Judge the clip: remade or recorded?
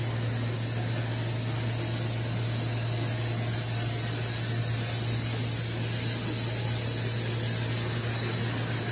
recorded